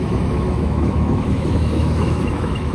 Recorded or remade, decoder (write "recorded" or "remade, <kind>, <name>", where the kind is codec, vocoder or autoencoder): remade, autoencoder, DAC-VAE